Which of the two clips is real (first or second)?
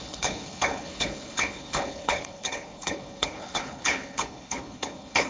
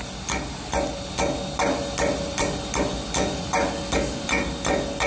second